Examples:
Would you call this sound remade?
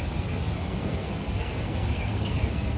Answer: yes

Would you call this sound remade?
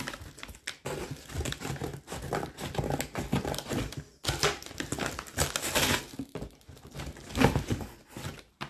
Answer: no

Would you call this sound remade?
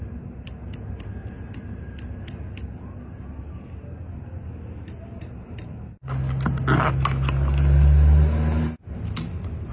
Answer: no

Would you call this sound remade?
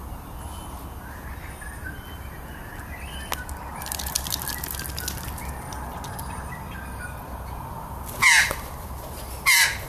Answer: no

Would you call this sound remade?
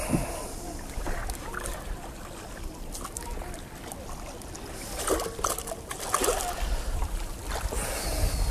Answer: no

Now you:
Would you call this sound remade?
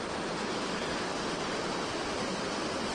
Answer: no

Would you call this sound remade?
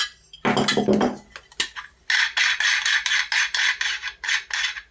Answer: no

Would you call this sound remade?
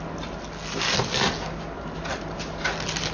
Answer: no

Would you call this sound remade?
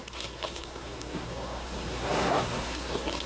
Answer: yes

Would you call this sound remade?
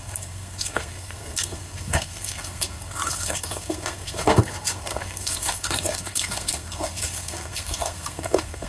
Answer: yes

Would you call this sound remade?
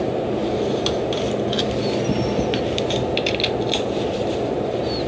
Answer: no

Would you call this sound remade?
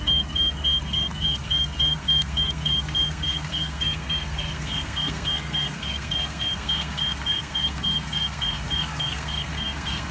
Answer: yes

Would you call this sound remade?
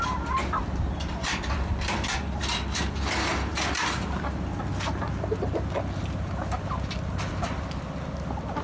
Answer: no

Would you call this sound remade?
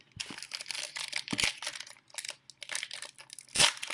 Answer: no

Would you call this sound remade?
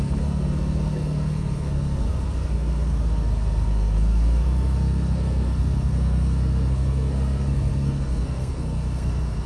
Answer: yes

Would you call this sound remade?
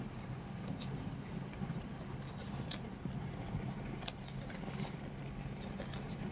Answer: no